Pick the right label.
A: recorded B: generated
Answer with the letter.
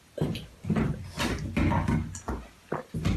A